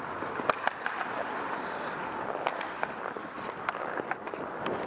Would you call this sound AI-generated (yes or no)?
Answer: no